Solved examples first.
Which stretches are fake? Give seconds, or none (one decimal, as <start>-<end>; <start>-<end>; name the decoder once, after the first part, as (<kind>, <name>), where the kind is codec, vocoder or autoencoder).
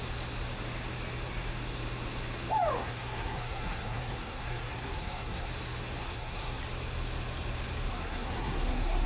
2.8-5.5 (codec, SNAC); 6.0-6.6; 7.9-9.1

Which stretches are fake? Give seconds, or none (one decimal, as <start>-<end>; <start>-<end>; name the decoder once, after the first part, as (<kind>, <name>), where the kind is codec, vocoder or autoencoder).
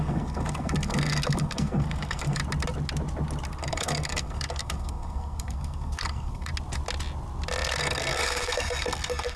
0.0-2.4 (codec, SNAC); 3.6-6.5; 7.8-9.4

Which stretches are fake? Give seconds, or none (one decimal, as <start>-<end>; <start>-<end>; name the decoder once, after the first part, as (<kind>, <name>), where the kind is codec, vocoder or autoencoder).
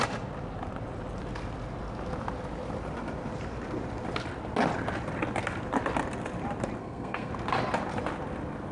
6.8-7.3 (codec, SNAC)